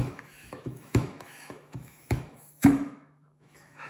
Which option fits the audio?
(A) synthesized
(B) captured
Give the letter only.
A